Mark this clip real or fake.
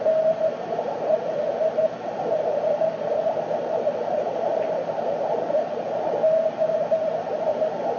fake